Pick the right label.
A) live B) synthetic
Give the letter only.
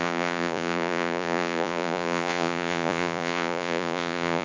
B